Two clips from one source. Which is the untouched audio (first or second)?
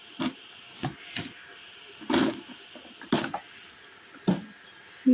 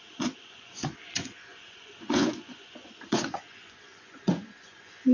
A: first